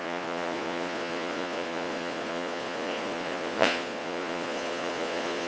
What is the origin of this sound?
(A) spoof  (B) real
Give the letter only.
A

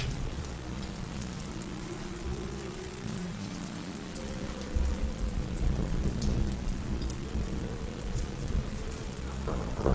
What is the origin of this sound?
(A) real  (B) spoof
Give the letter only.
B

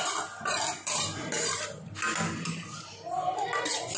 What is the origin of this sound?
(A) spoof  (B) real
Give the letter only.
B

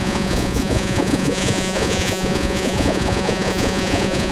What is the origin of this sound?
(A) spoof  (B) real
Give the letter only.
A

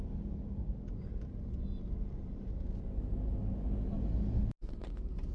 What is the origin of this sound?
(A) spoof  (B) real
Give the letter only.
B